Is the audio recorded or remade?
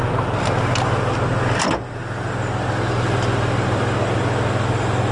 recorded